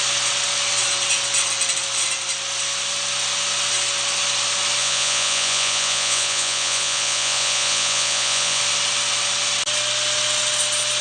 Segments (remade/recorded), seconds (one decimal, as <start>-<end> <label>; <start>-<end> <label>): 0.0-4.8 recorded; 4.8-8.6 remade; 8.6-11.0 recorded